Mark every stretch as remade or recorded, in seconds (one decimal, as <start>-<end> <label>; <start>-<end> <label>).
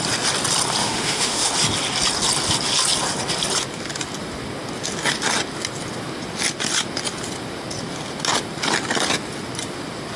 0.0-0.8 recorded; 0.8-1.5 remade; 1.5-10.2 recorded